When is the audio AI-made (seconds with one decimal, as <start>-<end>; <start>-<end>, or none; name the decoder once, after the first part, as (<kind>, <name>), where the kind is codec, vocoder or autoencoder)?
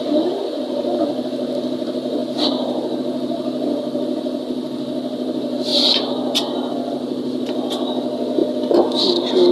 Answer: 0.0-2.2 (vocoder, BigVGAN v2); 3.0-5.7; 6.7-9.5